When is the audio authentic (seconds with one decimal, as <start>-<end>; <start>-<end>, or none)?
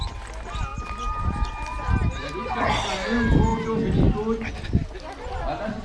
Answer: 0.0-5.8